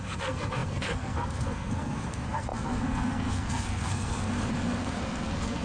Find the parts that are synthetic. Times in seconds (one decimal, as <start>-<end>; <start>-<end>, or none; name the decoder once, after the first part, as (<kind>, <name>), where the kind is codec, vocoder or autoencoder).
0.0-5.6 (codec, SNAC)